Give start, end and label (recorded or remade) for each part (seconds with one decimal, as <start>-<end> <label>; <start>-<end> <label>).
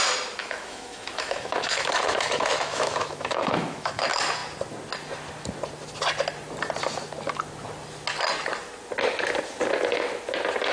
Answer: 0.0-0.4 recorded; 0.4-4.0 remade; 4.0-10.7 recorded